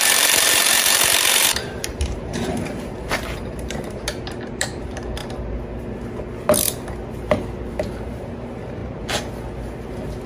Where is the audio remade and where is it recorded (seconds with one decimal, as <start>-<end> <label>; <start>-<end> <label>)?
0.0-5.2 remade; 5.2-8.0 recorded; 8.0-8.8 remade; 8.8-10.3 recorded